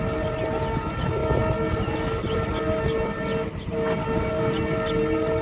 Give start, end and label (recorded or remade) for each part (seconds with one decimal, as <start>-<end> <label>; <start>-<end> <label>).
0.0-5.4 recorded